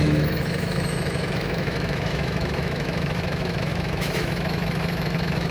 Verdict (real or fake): fake